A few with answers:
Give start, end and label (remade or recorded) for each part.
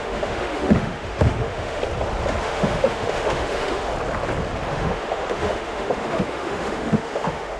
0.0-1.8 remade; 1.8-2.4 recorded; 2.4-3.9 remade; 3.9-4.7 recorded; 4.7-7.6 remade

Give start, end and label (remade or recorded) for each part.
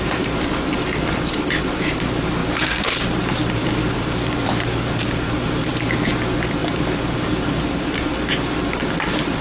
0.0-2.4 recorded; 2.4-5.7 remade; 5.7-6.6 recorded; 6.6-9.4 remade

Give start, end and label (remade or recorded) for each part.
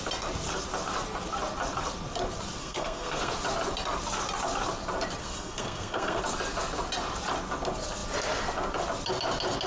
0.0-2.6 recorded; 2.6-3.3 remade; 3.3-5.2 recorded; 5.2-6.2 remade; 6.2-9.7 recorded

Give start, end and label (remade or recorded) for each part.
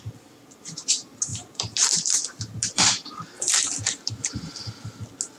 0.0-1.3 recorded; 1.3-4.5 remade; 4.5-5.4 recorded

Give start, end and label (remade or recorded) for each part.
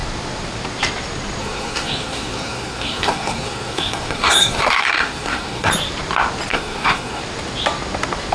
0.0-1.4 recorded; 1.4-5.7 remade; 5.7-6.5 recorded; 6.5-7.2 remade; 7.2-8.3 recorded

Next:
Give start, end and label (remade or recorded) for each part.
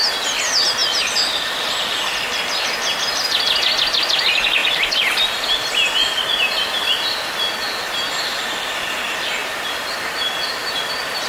0.0-0.8 recorded; 0.8-2.4 remade; 2.4-4.6 recorded; 4.6-6.2 remade; 6.2-9.4 recorded; 9.4-10.8 remade; 10.8-11.3 recorded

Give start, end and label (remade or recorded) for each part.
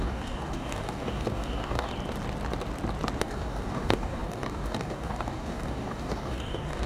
0.0-1.9 remade; 1.9-3.2 recorded; 3.2-6.9 remade